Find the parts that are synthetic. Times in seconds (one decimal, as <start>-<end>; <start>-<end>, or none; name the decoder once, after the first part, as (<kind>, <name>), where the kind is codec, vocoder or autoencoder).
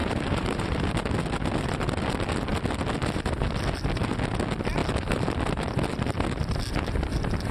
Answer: 0.0-0.9 (vocoder, BigVGAN v2)